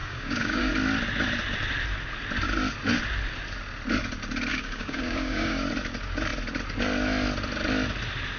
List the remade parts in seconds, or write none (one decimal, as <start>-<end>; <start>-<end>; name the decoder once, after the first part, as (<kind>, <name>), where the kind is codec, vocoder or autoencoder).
0.0-0.7 (codec, DAC); 4.5-5.7